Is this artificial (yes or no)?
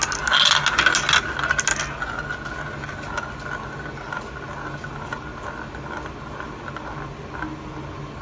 no